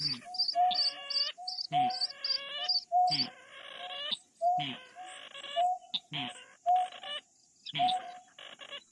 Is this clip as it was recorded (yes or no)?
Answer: yes